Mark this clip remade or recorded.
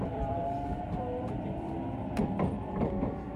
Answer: remade